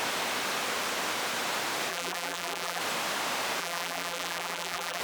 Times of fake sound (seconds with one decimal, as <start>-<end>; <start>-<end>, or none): 1.9-2.8; 3.6-5.0